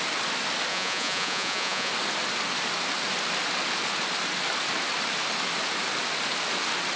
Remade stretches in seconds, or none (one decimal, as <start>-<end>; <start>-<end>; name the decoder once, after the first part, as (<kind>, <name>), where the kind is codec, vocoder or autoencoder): 0.7-1.9 (vocoder, Vocos)